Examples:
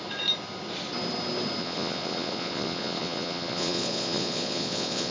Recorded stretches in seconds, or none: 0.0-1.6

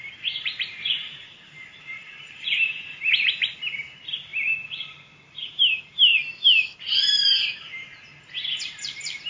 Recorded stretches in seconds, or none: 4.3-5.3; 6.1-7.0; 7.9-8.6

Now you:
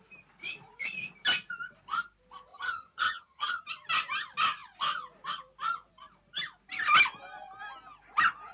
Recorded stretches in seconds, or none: 0.0-2.5; 3.6-8.5

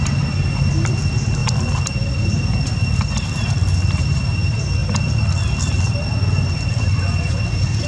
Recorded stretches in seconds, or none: 0.0-7.9

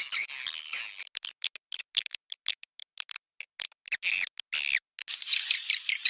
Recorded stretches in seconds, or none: 0.0-6.1